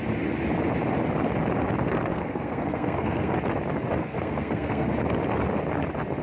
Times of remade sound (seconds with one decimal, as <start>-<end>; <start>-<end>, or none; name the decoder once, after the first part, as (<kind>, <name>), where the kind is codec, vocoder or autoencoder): 2.1-3.3 (codec, SNAC); 4.0-4.9